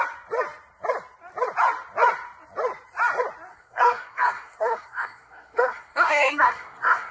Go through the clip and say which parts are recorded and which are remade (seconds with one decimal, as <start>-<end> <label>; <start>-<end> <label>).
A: 0.0-3.5 recorded; 3.5-7.1 remade